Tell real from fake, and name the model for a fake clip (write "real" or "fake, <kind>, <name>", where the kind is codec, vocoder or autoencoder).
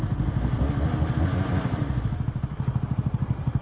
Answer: real